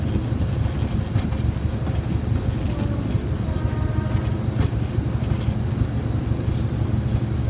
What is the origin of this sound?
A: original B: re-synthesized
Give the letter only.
A